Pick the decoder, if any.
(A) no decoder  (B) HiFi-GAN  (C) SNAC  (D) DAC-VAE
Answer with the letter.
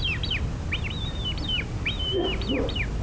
A